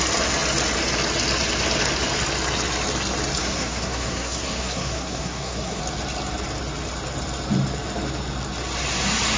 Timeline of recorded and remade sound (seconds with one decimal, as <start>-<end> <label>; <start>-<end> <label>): 0.0-3.4 recorded; 3.4-5.8 remade; 5.8-9.4 recorded